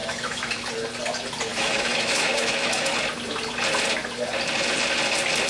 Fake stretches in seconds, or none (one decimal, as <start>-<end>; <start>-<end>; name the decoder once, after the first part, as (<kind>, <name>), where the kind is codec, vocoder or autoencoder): 0.0-0.7 (autoencoder, DAC-VAE); 1.5-2.9

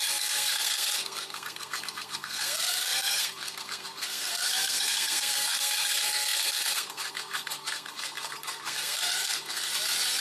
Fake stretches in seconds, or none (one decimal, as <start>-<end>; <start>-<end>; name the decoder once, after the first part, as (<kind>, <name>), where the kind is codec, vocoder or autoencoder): 0.0-9.7 (codec, SNAC)

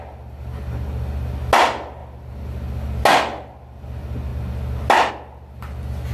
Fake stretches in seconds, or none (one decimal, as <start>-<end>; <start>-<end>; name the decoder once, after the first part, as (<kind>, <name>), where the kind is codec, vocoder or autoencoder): none

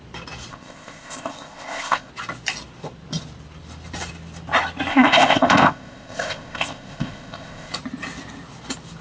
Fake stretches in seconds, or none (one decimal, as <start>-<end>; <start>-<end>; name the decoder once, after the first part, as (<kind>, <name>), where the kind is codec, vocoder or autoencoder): 0.5-2.1 (codec, ZipCodec); 4.9-7.7

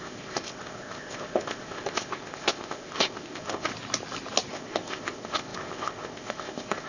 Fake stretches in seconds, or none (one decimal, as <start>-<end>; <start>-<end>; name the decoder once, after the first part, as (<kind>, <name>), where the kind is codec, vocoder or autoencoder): 0.0-3.7 (codec, ZipCodec); 4.5-6.9